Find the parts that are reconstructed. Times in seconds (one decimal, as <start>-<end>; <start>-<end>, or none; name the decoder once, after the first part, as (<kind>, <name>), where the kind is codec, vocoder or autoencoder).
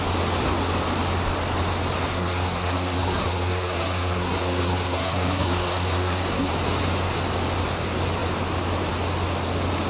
2.1-6.5 (codec, SNAC)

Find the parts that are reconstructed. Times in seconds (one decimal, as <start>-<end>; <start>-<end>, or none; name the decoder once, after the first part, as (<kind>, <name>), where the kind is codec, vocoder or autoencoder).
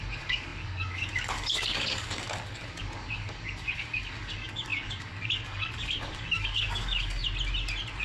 0.0-7.2 (codec, DAC)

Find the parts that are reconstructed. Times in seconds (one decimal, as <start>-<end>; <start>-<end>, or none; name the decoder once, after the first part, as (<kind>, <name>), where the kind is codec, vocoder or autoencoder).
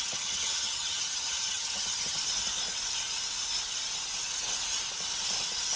0.0-2.2 (vocoder, HiFi-GAN)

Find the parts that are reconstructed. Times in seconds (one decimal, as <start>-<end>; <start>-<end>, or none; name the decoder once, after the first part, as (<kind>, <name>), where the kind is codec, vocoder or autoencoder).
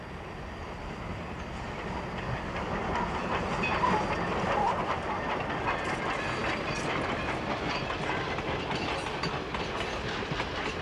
none